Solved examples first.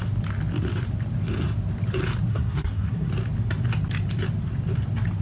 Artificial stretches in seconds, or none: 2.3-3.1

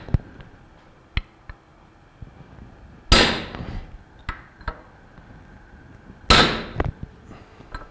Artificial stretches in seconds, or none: none

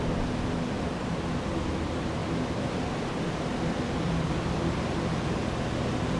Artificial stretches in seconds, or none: 2.2-6.2

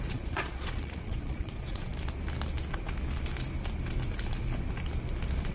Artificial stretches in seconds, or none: 0.0-1.9

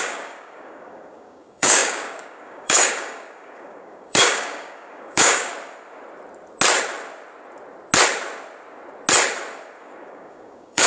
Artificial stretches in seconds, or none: 0.0-5.5; 9.8-10.9

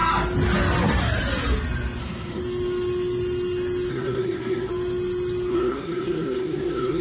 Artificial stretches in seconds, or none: 2.0-2.4; 3.9-4.7; 5.5-7.0

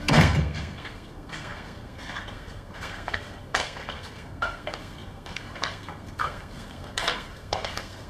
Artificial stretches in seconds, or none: 0.0-8.1